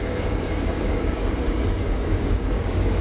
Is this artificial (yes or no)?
yes